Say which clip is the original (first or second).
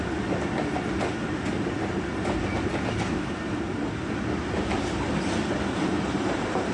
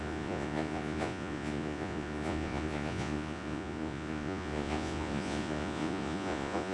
first